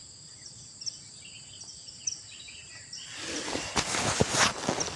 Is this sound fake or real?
real